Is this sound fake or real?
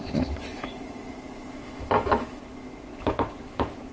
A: fake